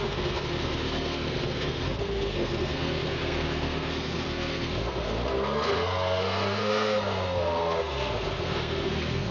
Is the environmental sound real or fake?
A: fake